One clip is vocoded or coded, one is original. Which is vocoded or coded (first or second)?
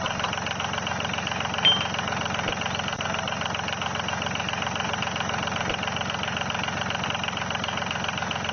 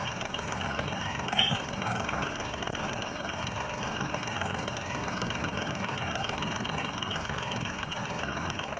second